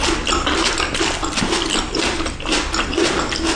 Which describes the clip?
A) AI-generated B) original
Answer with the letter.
B